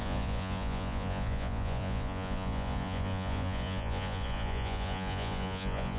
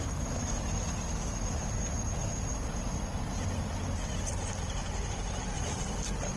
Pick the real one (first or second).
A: second